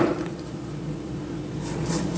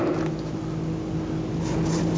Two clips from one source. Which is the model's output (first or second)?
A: first